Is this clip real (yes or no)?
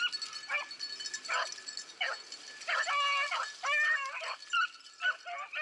yes